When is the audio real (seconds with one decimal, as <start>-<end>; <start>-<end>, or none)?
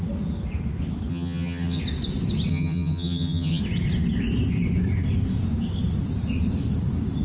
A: 0.0-1.1; 1.8-2.5; 3.6-7.2